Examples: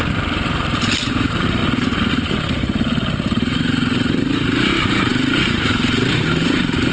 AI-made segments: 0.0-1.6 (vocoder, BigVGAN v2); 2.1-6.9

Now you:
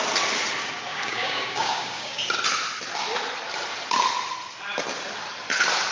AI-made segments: 0.9-2.3 (codec, DAC)